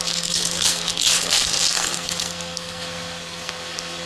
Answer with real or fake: fake